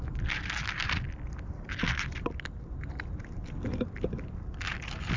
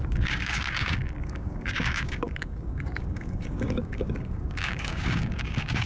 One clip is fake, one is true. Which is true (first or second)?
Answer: first